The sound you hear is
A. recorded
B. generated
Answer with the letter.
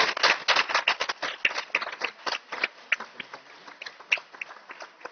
A